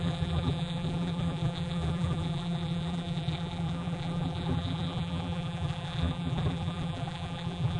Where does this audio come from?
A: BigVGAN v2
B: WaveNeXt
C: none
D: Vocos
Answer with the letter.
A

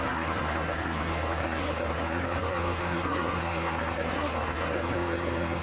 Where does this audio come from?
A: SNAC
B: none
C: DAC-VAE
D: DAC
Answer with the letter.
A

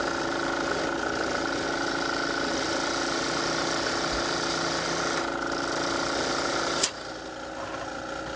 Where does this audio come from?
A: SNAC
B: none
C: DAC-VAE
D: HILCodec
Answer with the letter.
B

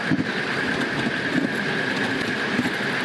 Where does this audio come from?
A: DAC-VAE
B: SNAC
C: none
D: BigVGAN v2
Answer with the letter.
C